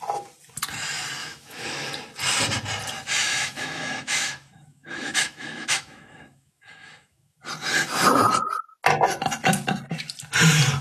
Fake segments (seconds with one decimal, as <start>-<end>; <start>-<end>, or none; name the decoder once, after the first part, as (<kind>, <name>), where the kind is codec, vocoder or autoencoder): 1.2-1.9 (autoencoder, DAC-VAE); 3.2-7.4